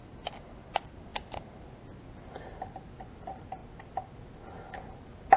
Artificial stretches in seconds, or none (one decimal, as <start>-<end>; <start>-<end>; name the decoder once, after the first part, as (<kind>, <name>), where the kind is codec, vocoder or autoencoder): 0.0-0.7 (vocoder, BigVGAN v2); 1.1-1.7